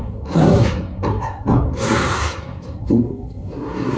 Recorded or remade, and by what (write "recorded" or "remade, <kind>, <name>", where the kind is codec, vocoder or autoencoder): remade, codec, SNAC